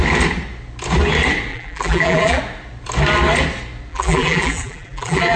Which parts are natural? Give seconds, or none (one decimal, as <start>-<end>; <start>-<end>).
0.0-1.5; 2.4-3.9